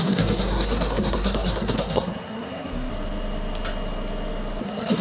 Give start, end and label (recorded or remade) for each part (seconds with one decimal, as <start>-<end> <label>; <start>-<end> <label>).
0.0-2.9 remade; 2.9-4.6 recorded; 4.6-5.0 remade

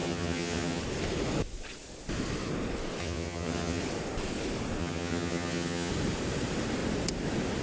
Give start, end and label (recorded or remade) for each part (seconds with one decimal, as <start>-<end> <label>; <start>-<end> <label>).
0.0-0.8 remade; 0.8-3.0 recorded; 3.0-3.8 remade; 3.8-4.8 recorded; 4.8-5.9 remade; 5.9-7.6 recorded

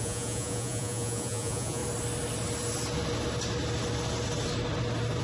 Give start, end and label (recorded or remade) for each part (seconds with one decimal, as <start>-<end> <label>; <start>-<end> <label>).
0.0-1.8 remade; 1.8-5.2 recorded

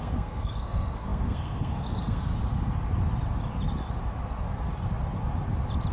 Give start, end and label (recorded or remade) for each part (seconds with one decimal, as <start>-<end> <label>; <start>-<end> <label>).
0.0-2.3 remade; 2.3-5.9 recorded